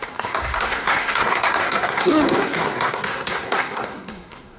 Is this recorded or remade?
remade